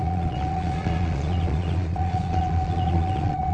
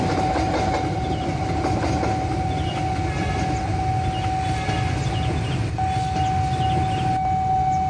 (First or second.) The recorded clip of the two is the second